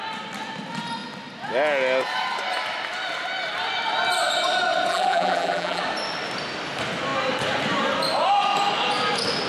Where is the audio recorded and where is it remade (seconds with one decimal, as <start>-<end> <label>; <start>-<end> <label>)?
0.0-4.9 recorded; 4.9-5.8 remade; 5.8-9.5 recorded